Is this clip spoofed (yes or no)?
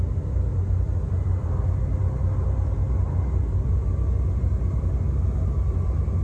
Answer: no